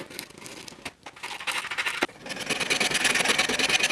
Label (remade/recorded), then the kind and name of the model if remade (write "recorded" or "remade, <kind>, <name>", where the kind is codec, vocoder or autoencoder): recorded